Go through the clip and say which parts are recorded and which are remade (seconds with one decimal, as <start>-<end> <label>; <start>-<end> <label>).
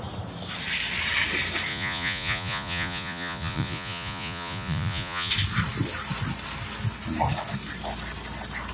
0.0-1.7 recorded; 1.7-5.3 remade; 5.3-8.7 recorded